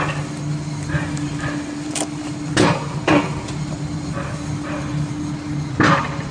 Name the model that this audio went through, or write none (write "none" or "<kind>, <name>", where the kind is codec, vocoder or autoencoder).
none